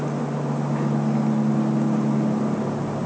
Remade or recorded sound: recorded